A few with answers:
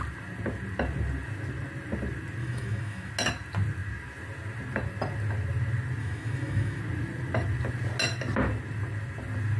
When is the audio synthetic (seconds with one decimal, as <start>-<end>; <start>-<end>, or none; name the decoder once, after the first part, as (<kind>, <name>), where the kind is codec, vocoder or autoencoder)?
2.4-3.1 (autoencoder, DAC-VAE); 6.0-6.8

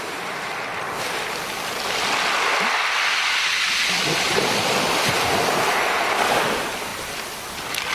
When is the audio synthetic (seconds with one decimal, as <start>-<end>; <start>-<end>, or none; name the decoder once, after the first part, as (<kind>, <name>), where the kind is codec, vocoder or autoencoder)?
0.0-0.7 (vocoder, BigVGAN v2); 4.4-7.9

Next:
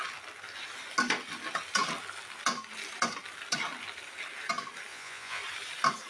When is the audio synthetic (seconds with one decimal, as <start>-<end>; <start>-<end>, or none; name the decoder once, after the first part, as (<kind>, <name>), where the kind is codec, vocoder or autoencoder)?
4.9-5.4 (vocoder, Vocos)

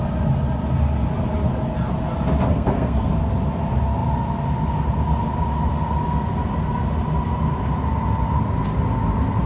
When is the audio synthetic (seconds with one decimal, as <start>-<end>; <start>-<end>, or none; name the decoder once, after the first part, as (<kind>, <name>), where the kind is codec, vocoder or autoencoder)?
2.5-3.1 (codec, SNAC)

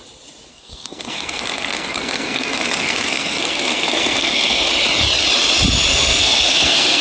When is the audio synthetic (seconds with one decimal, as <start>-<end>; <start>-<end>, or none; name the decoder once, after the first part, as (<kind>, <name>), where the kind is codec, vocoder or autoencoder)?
0.5-4.7 (codec, SNAC); 5.9-7.0

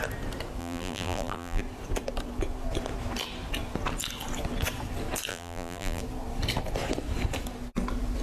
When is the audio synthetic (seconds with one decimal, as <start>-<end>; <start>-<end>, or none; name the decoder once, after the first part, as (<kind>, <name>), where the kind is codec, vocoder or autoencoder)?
0.6-1.6 (vocoder, BigVGAN v2); 5.3-6.0

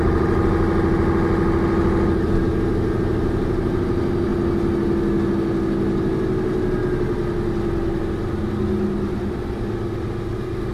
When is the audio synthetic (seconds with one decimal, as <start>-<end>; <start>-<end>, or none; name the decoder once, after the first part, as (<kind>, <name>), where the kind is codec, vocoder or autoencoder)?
none